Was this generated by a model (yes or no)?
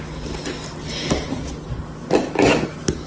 no